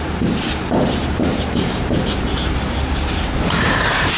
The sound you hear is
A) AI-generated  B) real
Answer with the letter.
A